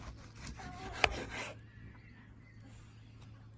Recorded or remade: recorded